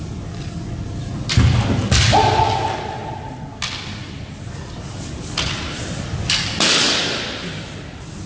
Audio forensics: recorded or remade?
recorded